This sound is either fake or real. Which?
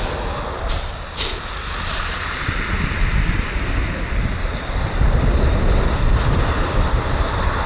real